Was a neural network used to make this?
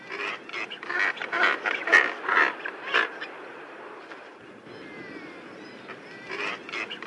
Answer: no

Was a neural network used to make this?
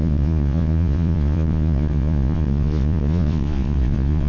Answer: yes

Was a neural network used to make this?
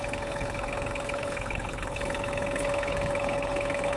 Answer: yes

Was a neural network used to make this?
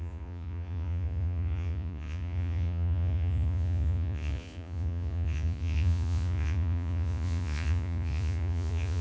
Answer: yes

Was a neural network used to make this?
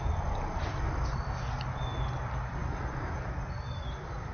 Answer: no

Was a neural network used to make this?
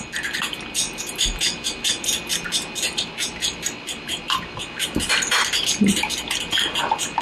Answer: no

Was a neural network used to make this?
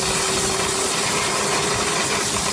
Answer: no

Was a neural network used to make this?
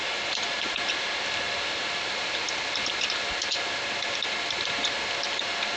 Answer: no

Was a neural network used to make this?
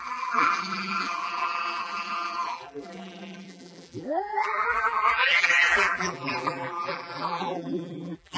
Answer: yes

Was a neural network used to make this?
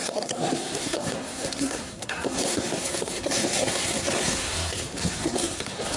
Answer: yes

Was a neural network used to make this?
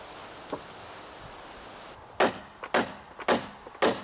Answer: no